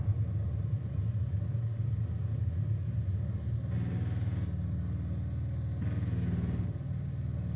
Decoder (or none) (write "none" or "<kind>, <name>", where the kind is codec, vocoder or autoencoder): none